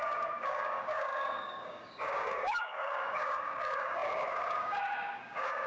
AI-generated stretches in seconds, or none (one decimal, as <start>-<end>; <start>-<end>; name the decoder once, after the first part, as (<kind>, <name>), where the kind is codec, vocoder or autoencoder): 0.0-5.7 (codec, DAC)